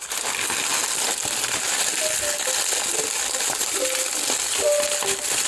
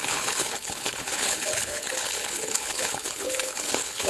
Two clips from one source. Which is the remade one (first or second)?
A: second